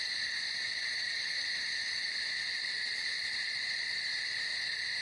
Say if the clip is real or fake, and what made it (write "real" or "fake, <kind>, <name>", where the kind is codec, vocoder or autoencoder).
real